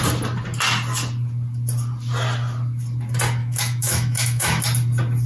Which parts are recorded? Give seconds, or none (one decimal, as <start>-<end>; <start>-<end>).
0.0-3.4; 4.6-5.3